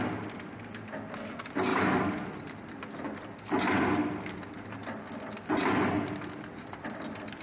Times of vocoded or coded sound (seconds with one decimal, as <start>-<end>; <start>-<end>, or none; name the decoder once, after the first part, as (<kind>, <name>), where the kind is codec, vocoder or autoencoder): none